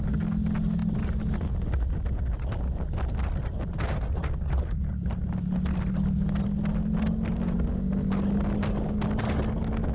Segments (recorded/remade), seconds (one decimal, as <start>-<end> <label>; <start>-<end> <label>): 0.0-9.9 recorded